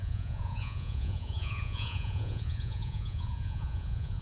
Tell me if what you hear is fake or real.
fake